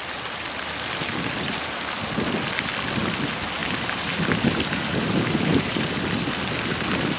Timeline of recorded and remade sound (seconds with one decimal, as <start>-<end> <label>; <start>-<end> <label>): 0.0-3.6 recorded; 3.6-6.0 remade; 6.0-7.2 recorded